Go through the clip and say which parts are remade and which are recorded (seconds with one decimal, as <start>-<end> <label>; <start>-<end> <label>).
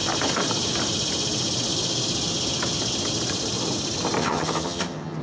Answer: 0.0-4.2 recorded; 4.2-5.2 remade